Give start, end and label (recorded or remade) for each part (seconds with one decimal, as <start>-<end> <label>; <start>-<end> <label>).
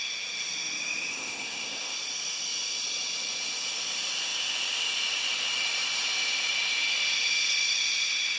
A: 0.0-1.1 recorded; 1.1-2.0 remade; 2.0-8.4 recorded